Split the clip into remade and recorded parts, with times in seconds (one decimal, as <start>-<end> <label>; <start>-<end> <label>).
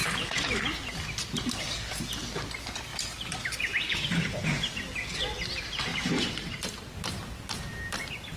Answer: 0.0-0.6 remade; 0.6-2.9 recorded; 2.9-4.7 remade; 4.7-5.9 recorded; 5.9-6.8 remade; 6.8-8.4 recorded